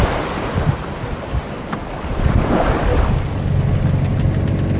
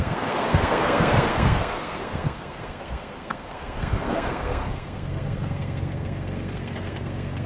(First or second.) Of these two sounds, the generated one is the second